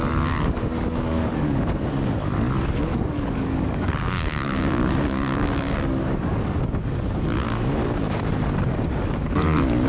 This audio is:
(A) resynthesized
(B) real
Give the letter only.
A